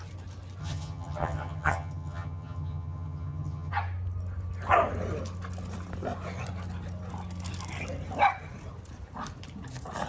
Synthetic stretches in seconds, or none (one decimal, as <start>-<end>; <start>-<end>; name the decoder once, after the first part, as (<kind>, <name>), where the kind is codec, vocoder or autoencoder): 0.6-3.7 (vocoder, HiFi-GAN)